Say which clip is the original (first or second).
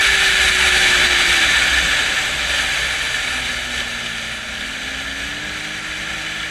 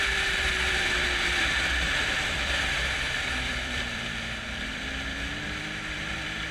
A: first